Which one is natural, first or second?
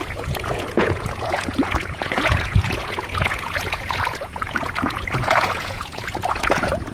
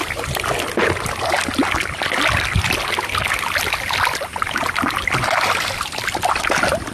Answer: second